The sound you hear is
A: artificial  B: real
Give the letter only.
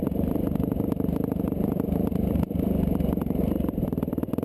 A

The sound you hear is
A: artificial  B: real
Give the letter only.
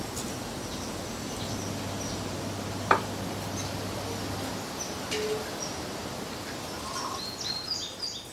B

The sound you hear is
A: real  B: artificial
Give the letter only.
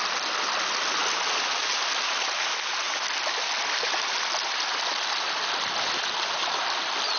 A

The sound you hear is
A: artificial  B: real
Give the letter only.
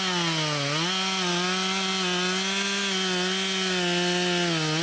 B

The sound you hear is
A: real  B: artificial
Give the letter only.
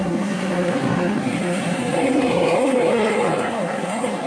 B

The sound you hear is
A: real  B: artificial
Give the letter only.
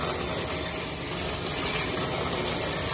A